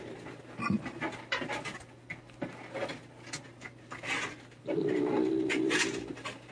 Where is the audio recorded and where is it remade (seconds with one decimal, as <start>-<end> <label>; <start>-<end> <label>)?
0.0-6.5 recorded